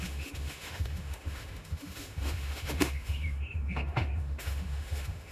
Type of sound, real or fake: fake